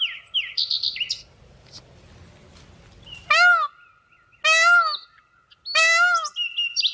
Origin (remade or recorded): recorded